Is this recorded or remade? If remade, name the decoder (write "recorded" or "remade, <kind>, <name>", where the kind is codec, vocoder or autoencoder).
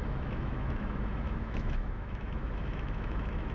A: remade, autoencoder, DAC-VAE